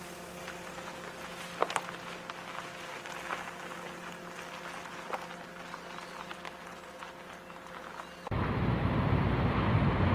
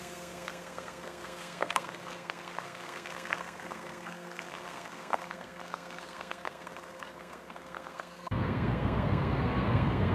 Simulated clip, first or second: second